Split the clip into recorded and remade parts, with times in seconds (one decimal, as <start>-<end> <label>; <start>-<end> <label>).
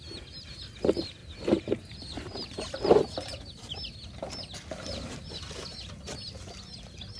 0.0-7.2 recorded